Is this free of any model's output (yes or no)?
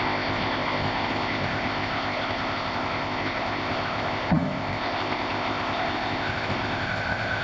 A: no